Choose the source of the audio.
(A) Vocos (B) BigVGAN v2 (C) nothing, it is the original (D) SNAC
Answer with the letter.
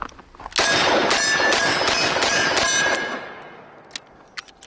C